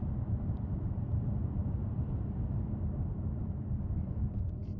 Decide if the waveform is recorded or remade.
recorded